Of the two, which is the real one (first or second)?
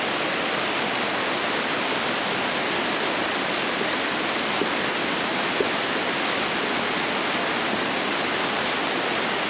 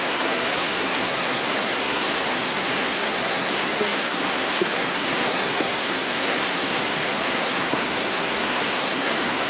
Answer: first